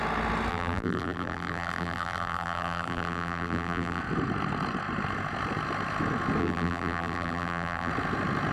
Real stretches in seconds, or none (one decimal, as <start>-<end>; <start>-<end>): 0.0-0.5; 4.0-6.4; 7.9-8.5